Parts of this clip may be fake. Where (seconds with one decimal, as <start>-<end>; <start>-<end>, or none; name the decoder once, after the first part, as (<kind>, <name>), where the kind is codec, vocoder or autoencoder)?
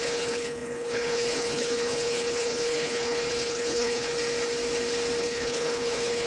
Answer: 0.0-4.1 (codec, HILCodec); 5.2-6.3